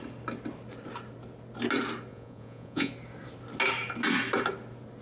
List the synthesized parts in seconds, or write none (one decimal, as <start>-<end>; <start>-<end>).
2.1-2.9